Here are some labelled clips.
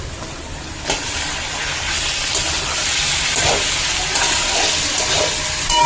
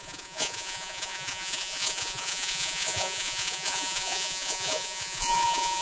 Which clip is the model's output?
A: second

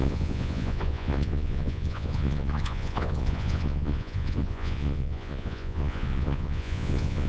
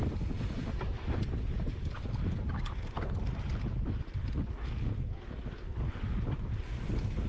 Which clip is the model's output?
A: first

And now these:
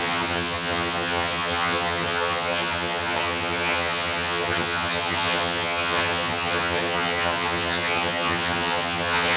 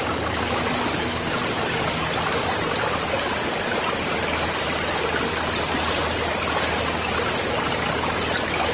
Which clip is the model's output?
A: first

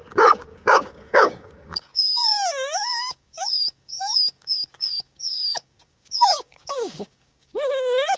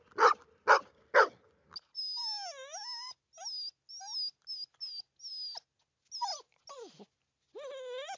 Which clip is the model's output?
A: first